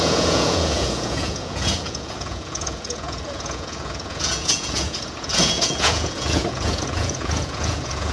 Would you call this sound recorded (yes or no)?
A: no